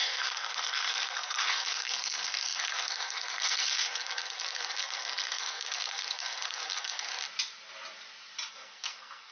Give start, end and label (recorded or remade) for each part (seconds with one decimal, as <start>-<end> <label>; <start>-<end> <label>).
0.0-7.1 remade; 7.1-8.5 recorded; 8.5-9.3 remade